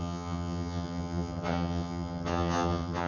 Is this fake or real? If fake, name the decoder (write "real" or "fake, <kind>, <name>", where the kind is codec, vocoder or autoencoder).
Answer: fake, vocoder, HiFi-GAN